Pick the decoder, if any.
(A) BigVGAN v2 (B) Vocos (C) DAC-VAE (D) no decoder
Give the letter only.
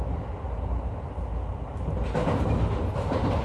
D